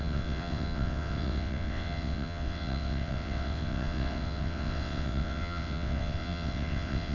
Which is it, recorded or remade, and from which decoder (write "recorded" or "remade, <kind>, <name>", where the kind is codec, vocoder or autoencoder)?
remade, vocoder, WaveNeXt